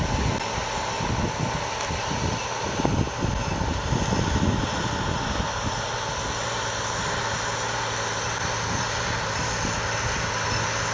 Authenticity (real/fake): real